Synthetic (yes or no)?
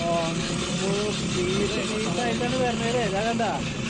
no